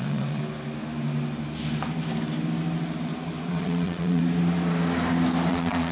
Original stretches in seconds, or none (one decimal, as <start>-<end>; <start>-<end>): 0.4-3.5; 4.2-5.5